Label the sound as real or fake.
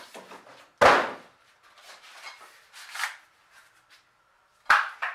real